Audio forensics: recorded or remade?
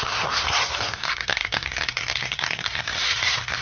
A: remade